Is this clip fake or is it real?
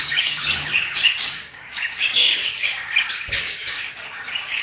fake